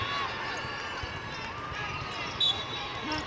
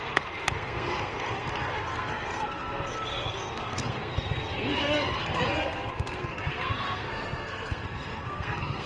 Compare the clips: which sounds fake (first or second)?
second